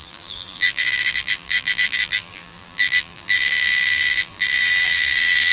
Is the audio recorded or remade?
remade